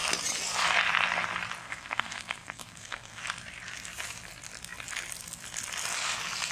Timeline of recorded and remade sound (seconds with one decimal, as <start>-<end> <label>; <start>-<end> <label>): 0.0-1.6 recorded; 1.6-3.2 remade; 3.2-6.5 recorded